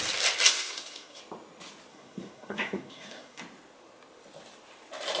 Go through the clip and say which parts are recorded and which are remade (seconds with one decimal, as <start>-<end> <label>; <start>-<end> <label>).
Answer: 0.0-0.5 recorded; 0.5-1.2 remade; 1.2-1.9 recorded; 1.9-3.4 remade; 3.4-5.2 recorded